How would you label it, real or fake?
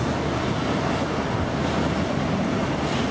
real